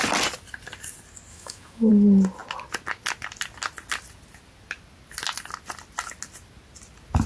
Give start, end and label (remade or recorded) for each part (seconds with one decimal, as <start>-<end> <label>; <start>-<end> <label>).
0.0-1.3 recorded; 1.3-1.9 remade; 1.9-7.3 recorded